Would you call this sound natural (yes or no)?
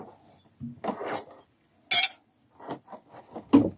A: yes